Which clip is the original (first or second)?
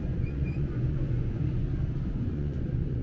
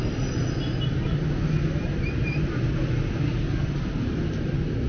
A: second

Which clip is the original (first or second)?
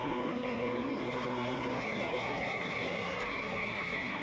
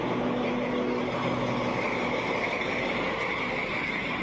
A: second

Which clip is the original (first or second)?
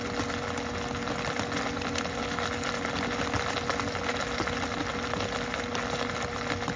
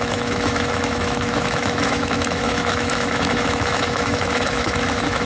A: first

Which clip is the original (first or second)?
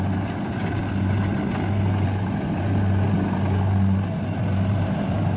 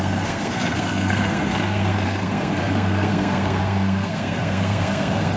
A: first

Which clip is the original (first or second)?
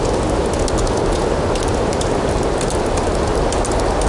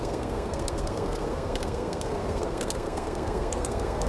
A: first